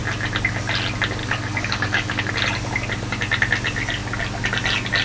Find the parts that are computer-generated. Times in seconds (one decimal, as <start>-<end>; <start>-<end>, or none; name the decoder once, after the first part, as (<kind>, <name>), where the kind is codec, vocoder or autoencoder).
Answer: 1.2-2.3 (codec, DAC)